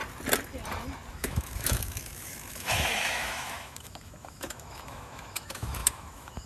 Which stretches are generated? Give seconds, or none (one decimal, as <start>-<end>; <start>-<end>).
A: 1.1-6.5